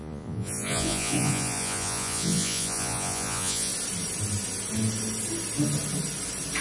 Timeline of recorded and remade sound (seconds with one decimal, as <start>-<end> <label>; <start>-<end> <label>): 0.0-3.7 remade; 3.7-6.6 recorded